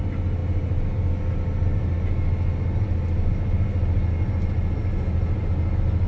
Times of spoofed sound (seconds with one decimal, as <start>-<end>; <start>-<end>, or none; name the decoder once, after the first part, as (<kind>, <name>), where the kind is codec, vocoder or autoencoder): none